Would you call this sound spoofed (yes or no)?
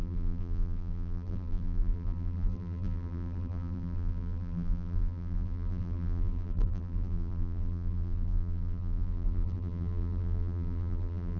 yes